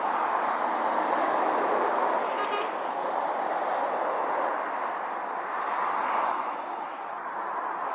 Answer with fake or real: real